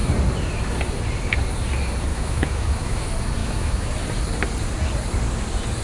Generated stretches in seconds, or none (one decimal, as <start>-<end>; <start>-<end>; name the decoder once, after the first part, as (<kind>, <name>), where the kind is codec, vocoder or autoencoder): 2.1-3.0 (autoencoder, DAC-VAE); 3.4-3.9